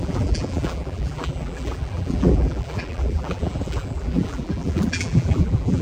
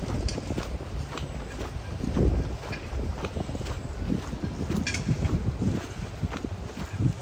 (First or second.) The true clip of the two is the second